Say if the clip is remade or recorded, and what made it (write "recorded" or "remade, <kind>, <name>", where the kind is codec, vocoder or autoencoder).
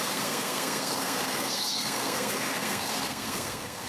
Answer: remade, codec, SNAC